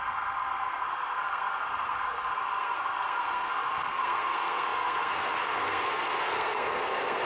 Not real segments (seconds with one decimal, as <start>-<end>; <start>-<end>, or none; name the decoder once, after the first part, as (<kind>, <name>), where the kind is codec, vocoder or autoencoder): 0.0-7.2 (codec, SNAC)